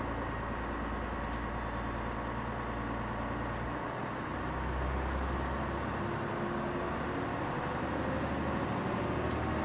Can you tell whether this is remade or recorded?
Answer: recorded